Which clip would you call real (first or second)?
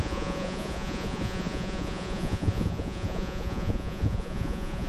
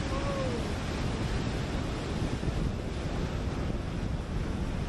second